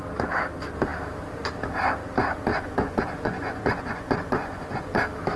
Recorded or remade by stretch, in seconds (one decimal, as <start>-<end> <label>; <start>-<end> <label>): 0.0-2.5 recorded; 2.5-5.0 remade; 5.0-5.4 recorded